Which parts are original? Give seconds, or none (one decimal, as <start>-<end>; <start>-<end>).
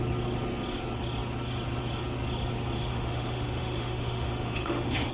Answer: 0.0-2.9